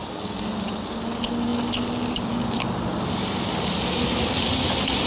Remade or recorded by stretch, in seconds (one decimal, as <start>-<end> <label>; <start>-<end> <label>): 0.0-5.1 recorded